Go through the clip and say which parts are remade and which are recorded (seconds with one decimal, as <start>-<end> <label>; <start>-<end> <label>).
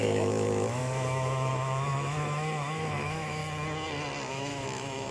0.0-3.4 remade; 3.4-4.3 recorded; 4.3-5.1 remade